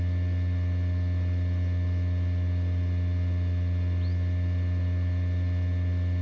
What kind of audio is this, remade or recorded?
recorded